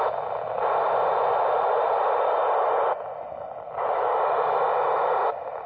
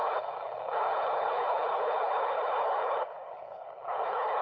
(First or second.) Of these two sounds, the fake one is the second